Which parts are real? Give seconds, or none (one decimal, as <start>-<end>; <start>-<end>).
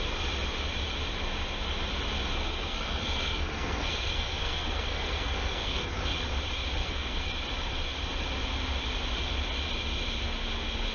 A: 0.0-2.5; 6.0-6.8; 7.3-10.9